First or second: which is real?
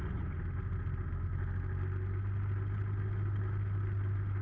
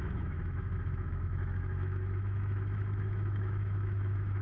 first